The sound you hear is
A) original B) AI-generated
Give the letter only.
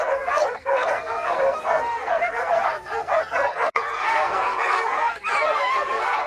B